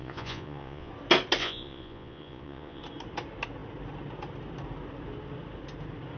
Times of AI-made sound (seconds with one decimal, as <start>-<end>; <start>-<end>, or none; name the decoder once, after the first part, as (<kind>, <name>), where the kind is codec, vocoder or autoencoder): 0.0-0.9 (vocoder, Vocos); 1.4-2.8